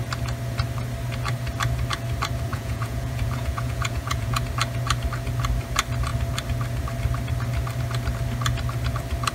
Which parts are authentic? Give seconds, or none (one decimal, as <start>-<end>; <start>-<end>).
0.0-2.5; 4.4-9.3